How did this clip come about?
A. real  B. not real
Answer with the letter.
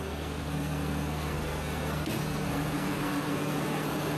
B